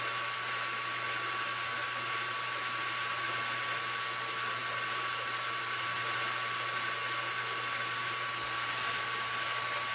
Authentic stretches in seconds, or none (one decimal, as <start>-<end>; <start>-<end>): 0.0-9.9